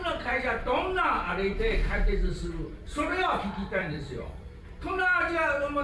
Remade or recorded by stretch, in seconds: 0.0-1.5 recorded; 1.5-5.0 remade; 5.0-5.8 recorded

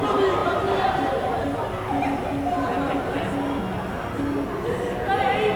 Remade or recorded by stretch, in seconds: 0.0-5.6 recorded

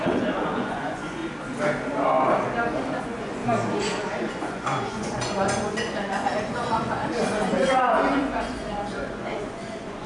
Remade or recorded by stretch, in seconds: 0.0-1.2 remade; 1.2-3.0 recorded; 3.0-3.4 remade; 3.4-4.3 recorded; 4.3-10.1 remade

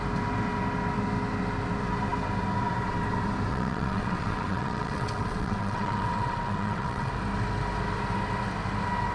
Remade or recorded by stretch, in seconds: 0.0-3.5 recorded; 3.5-7.1 remade; 7.1-9.1 recorded